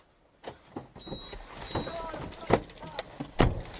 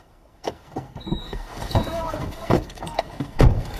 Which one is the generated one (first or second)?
second